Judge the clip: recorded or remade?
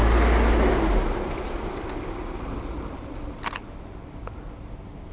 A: recorded